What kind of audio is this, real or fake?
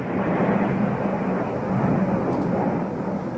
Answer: real